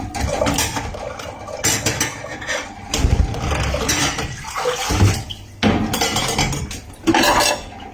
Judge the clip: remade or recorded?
recorded